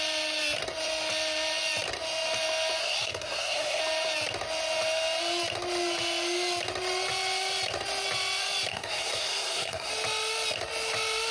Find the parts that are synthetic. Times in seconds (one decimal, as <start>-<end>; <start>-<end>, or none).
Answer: 2.8-3.8; 8.7-9.9